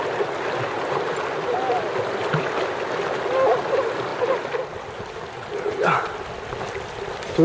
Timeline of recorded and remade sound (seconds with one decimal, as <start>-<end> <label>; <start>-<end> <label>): 0.0-7.4 recorded